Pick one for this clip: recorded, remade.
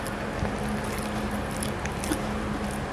recorded